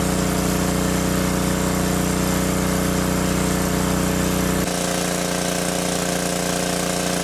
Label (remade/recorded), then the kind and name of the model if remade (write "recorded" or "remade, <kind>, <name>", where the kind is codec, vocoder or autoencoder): recorded